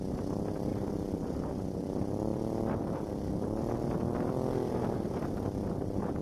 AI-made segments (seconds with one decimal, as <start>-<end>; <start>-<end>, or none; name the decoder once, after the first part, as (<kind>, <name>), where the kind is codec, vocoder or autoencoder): 0.7-1.8 (vocoder, BigVGAN v2); 2.3-6.2